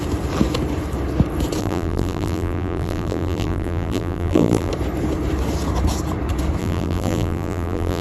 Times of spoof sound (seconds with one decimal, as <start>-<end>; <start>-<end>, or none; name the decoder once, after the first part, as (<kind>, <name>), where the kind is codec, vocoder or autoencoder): 1.6-4.7 (vocoder, BigVGAN v2); 6.6-8.0